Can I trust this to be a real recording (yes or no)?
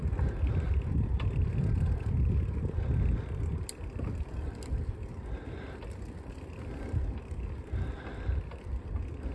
yes